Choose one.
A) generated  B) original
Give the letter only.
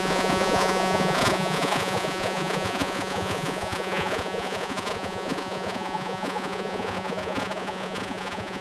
A